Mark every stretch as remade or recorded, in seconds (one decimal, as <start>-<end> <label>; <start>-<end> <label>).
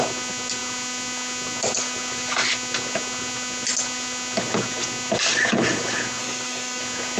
0.0-6.2 recorded; 6.2-6.8 remade; 6.8-7.2 recorded